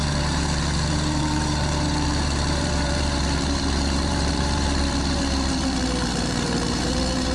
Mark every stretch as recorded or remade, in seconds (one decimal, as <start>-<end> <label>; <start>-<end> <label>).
0.0-7.3 remade